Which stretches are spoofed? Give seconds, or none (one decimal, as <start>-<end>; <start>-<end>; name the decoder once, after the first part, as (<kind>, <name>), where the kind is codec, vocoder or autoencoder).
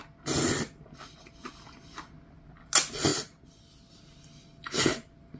none